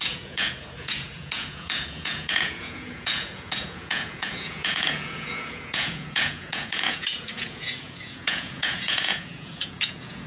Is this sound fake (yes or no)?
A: yes